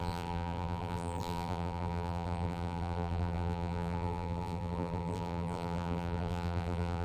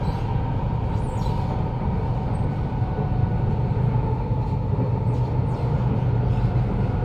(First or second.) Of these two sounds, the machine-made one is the first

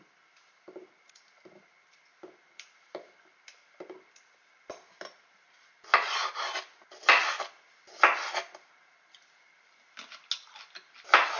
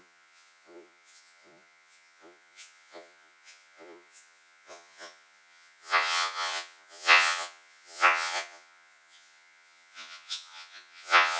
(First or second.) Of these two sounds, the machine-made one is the second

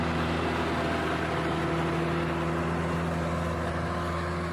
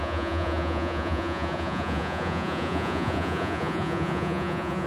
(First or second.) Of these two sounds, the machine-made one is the second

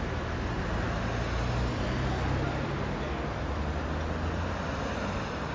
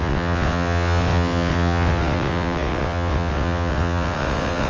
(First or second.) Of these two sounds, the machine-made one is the second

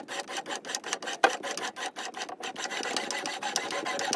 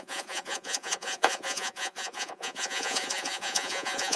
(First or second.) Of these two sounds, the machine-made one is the second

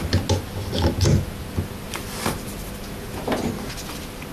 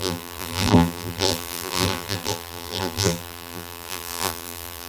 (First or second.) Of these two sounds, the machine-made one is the second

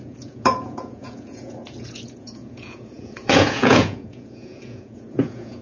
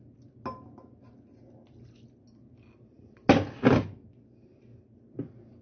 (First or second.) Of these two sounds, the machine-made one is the first